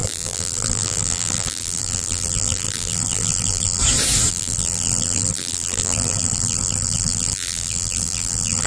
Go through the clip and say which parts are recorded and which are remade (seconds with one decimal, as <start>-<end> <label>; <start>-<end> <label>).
0.0-3.8 remade; 3.8-4.3 recorded; 4.3-8.7 remade